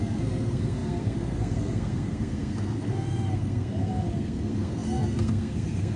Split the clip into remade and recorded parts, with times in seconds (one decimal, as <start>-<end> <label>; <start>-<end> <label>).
0.0-6.0 remade

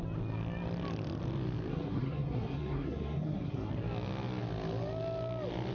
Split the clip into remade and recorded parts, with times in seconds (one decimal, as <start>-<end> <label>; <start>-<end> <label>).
0.0-1.7 recorded; 1.7-3.7 remade; 3.7-5.7 recorded

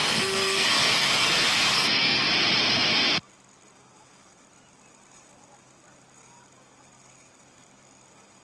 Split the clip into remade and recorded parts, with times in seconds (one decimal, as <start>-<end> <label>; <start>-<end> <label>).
0.0-2.3 remade; 2.3-8.4 recorded

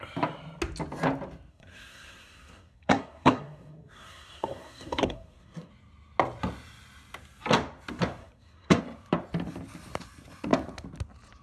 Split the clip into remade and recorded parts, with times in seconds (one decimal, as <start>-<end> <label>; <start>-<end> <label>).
0.0-1.5 recorded; 1.5-5.7 remade; 5.7-8.2 recorded; 8.2-8.8 remade; 8.8-11.4 recorded

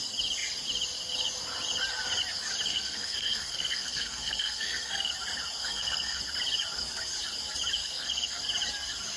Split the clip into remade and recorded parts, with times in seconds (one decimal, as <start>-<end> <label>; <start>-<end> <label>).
0.0-2.7 recorded; 2.7-5.1 remade; 5.1-5.6 recorded; 5.6-6.2 remade; 6.2-7.8 recorded; 7.8-8.4 remade; 8.4-9.2 recorded

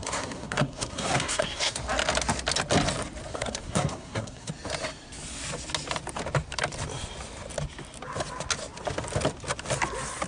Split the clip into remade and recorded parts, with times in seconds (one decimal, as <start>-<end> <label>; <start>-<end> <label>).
0.0-1.8 remade; 1.8-3.3 recorded; 3.3-4.5 remade; 4.5-10.3 recorded

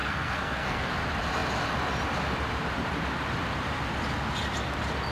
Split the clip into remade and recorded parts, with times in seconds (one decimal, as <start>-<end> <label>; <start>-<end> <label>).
0.0-0.9 remade; 0.9-5.1 recorded

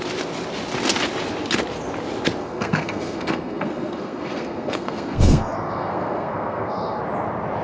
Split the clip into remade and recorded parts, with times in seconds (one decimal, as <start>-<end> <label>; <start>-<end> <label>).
0.0-2.4 recorded; 2.4-7.0 remade; 7.0-7.6 recorded